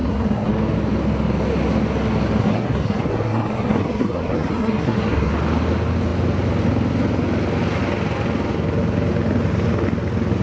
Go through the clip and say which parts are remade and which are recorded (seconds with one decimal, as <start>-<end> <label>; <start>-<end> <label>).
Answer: 0.0-0.5 remade; 0.5-2.4 recorded; 2.4-5.3 remade; 5.3-10.4 recorded